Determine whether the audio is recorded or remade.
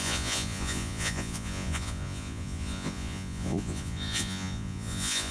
remade